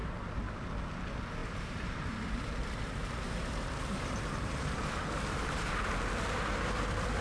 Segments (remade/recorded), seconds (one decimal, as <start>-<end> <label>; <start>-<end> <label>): 0.0-0.5 remade; 0.5-1.4 recorded; 1.4-5.7 remade; 5.7-7.2 recorded